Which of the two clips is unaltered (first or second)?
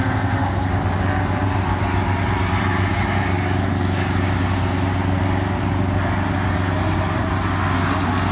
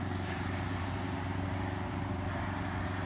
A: first